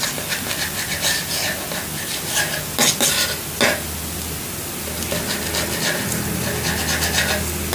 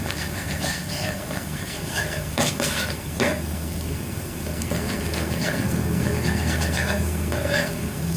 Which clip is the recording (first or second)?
first